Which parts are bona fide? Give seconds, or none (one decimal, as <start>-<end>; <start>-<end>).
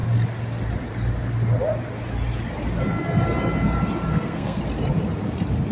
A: 0.0-4.1; 4.6-5.7